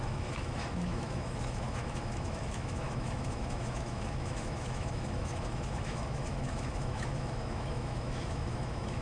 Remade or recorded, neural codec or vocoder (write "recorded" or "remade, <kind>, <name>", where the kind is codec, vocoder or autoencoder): remade, autoencoder, DAC-VAE